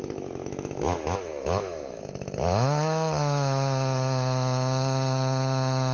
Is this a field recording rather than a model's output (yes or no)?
no